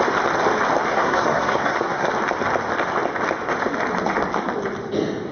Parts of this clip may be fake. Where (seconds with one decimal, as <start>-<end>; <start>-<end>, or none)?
0.9-2.1